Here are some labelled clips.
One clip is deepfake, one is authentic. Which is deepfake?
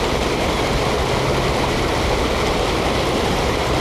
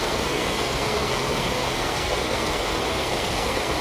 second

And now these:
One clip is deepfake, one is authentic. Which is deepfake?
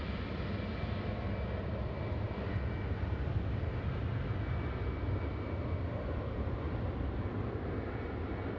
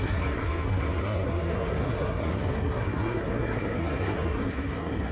second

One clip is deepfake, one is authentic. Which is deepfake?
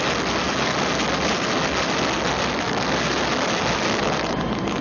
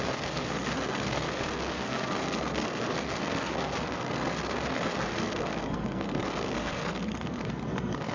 second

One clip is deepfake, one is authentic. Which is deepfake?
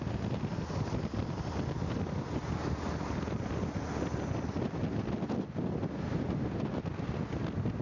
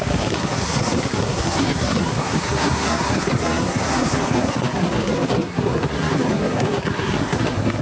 second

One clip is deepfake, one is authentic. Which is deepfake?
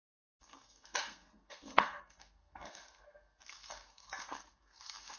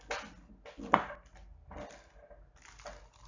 first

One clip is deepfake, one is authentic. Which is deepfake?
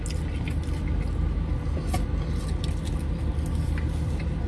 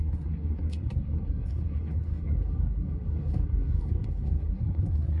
second